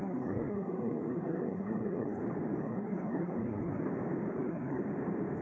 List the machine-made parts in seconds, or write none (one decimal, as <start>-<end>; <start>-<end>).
0.0-2.2; 2.6-3.8; 4.3-4.8